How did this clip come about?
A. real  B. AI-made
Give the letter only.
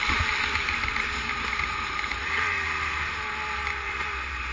B